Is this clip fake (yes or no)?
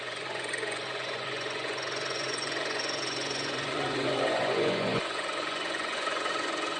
yes